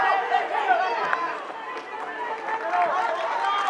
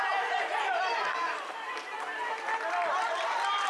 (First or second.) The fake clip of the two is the second